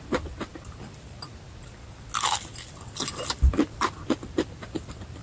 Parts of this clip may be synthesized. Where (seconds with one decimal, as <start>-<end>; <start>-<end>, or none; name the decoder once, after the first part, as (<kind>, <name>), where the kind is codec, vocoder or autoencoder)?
none